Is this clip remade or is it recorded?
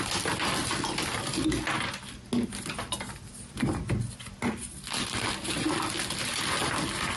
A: recorded